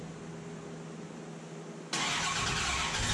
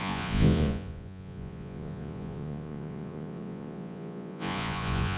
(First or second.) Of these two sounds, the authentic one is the first